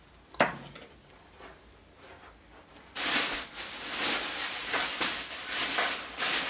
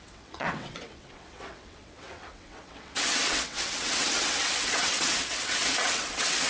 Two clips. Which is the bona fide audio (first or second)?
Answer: first